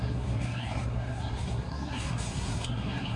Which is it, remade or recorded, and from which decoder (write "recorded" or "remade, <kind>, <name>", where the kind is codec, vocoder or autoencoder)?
remade, codec, SNAC